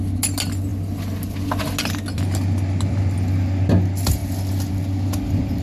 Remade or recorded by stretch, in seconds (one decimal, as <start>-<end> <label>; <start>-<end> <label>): 0.0-5.6 recorded